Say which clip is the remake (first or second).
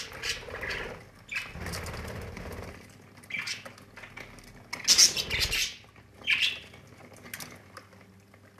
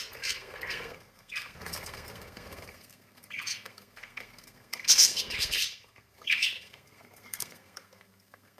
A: second